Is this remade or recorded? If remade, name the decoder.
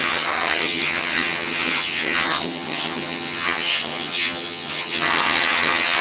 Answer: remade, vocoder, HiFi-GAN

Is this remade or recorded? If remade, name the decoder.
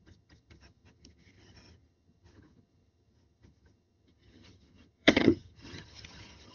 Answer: remade, vocoder, HiFi-GAN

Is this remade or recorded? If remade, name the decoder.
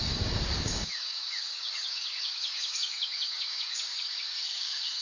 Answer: remade, codec, DAC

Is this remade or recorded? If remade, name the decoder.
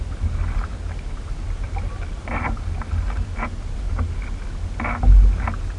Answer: recorded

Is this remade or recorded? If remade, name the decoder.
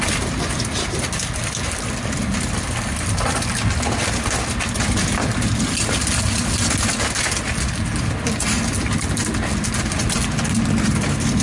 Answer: recorded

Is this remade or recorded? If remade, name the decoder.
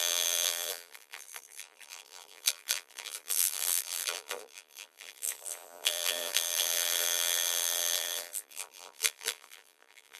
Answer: remade, vocoder, BigVGAN v2